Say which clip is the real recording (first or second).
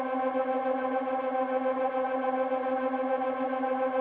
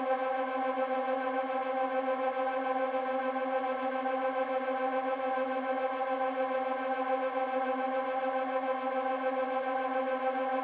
second